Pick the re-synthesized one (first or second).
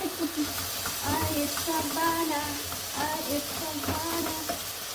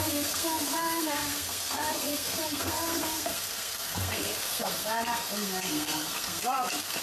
second